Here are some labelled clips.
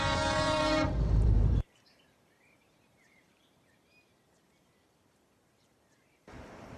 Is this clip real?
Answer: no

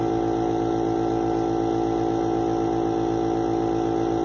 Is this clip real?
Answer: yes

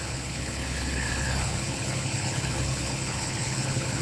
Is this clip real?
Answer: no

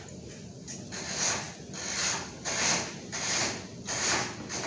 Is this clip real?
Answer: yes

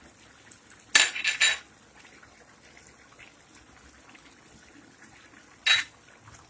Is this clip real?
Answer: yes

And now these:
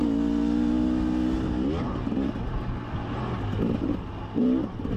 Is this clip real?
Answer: yes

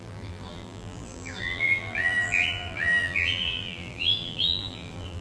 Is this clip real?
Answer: no